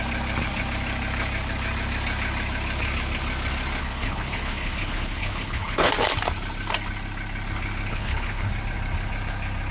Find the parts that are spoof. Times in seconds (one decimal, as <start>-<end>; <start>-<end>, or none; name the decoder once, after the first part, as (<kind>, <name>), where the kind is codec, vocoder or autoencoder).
3.8-5.9 (codec, HILCodec); 7.9-8.5

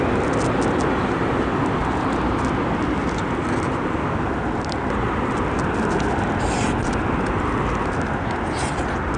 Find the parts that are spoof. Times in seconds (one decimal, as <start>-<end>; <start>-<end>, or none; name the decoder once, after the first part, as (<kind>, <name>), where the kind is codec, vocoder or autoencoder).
none